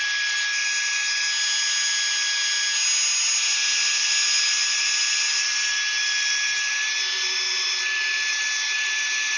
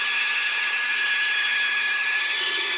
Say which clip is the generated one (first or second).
second